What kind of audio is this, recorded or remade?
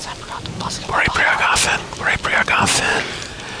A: recorded